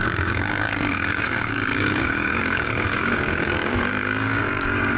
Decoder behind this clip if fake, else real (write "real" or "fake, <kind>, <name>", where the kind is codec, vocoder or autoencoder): fake, codec, DAC